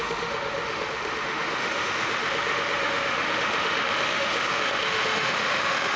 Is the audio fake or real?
fake